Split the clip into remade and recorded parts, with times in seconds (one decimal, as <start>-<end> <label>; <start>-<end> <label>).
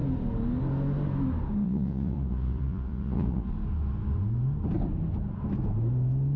0.0-1.6 recorded; 1.6-3.5 remade; 3.5-6.4 recorded